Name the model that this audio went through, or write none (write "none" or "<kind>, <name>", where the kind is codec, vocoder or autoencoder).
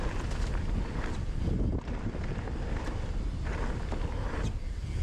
none